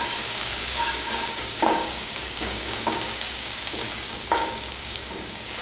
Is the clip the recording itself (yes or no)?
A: no